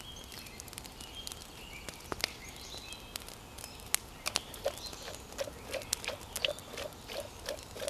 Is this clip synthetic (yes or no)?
no